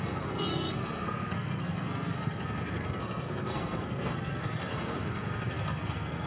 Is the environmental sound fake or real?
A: fake